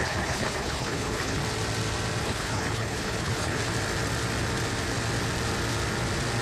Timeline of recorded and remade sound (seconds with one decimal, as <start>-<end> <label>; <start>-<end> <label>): 0.0-1.4 remade; 1.4-2.2 recorded; 2.2-3.6 remade; 3.6-6.4 recorded